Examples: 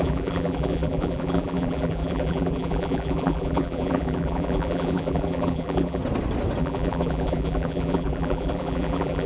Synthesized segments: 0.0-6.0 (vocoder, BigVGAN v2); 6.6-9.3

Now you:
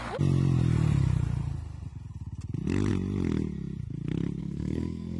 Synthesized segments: 4.4-5.2 (codec, SNAC)